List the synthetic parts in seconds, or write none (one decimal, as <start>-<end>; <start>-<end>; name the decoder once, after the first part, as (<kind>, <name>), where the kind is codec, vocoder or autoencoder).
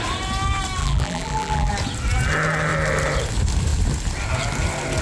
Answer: 0.8-1.7 (vocoder, BigVGAN v2)